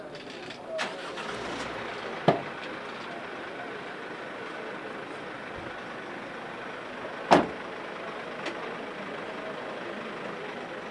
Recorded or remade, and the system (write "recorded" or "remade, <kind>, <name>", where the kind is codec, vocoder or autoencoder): recorded